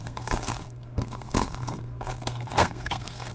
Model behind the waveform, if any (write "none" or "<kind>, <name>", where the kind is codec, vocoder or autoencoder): codec, SNAC